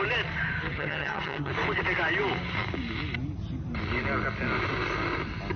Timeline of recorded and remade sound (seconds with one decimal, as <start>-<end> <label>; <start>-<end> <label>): 0.0-0.7 recorded; 0.7-1.5 remade; 1.5-5.6 recorded